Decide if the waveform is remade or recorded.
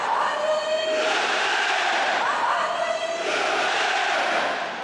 remade